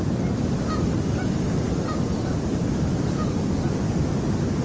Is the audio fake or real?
real